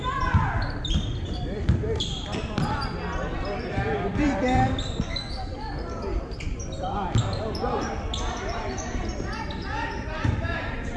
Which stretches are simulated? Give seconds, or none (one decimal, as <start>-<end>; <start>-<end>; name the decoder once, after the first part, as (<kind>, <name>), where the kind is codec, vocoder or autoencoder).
0.0-11.0 (vocoder, BigVGAN v2)